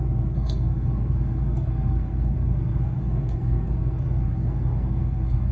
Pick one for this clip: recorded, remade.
remade